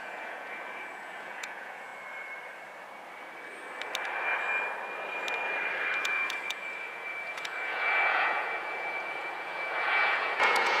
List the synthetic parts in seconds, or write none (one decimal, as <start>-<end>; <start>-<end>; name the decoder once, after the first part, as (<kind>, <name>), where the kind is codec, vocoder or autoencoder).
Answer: 0.0-1.9 (vocoder, Vocos); 6.0-10.8